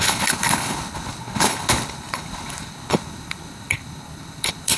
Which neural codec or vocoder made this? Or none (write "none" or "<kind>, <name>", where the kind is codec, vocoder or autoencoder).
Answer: codec, HILCodec